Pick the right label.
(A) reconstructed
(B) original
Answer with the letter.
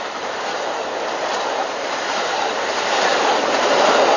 A